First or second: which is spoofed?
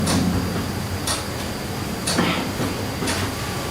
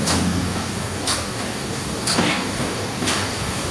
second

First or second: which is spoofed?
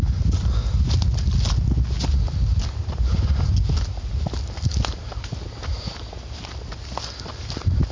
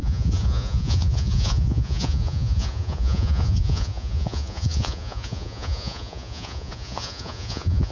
second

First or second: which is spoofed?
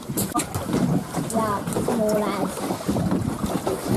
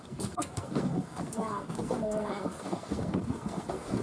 second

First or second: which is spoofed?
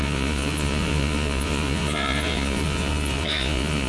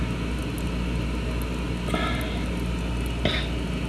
first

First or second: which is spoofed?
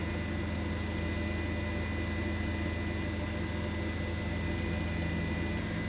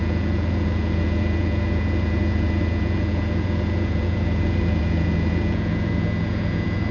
second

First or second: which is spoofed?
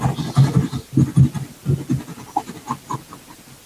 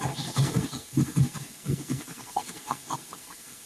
second